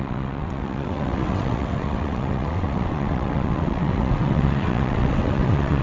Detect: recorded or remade remade